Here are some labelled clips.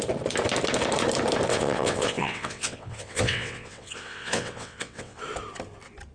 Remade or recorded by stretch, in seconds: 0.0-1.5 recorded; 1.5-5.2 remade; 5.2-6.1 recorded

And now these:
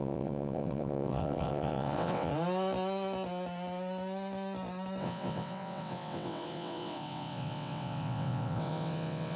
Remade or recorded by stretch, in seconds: 0.0-2.3 remade; 2.3-5.0 recorded; 5.0-9.4 remade